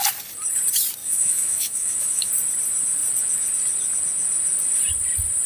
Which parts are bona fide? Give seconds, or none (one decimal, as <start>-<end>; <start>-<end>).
0.0-1.0; 2.3-5.5